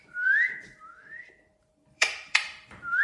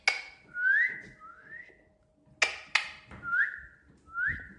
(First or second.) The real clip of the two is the second